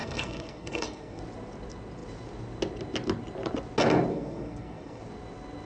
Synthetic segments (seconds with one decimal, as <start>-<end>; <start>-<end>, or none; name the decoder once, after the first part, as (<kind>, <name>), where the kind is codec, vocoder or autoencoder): 0.0-1.2 (codec, SNAC); 4.1-5.0